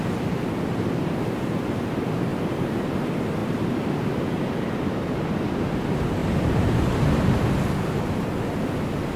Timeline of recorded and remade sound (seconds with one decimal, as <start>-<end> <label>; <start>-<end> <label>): 0.0-2.3 recorded; 2.3-2.8 remade; 2.8-3.4 recorded; 3.4-5.2 remade; 5.2-6.2 recorded; 6.2-6.8 remade; 6.8-9.2 recorded